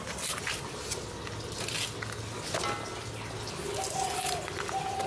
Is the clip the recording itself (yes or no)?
yes